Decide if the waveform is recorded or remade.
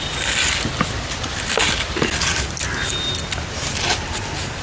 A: recorded